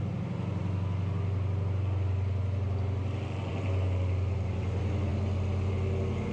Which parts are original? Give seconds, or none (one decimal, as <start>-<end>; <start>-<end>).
0.0-6.3